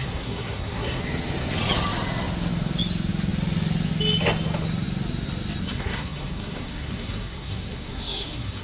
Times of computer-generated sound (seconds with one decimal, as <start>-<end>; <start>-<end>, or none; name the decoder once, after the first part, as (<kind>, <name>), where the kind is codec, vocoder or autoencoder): 0.0-1.0 (codec, SNAC); 5.6-8.6